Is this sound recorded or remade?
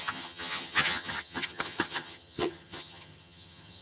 remade